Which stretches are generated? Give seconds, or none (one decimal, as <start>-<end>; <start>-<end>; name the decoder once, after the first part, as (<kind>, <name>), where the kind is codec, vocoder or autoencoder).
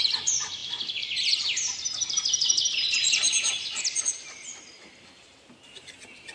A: 0.0-6.3 (vocoder, BigVGAN v2)